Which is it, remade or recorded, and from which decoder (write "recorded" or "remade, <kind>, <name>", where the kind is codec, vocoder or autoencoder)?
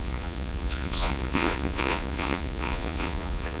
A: remade, vocoder, Vocos